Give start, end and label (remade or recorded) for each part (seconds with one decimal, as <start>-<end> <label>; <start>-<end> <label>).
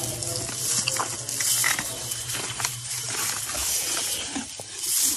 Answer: 0.0-1.6 recorded; 1.6-4.5 remade; 4.5-5.2 recorded